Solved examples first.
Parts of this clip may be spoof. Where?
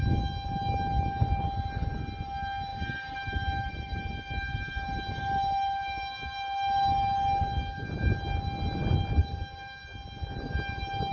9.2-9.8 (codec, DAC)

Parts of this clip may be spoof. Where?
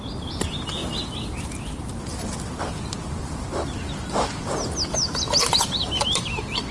none